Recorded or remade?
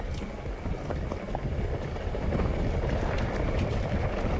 recorded